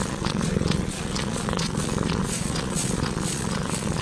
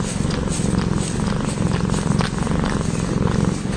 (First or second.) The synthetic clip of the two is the first